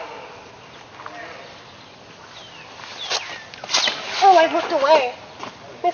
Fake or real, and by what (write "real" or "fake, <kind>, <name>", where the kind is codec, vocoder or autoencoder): real